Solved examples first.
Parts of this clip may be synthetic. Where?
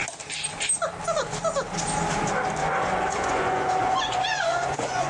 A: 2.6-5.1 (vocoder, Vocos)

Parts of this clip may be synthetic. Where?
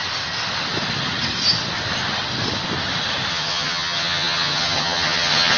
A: 3.3-5.6 (vocoder, HiFi-GAN)